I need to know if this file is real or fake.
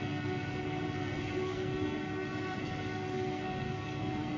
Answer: fake